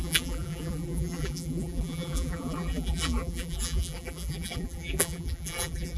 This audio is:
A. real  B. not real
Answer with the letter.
B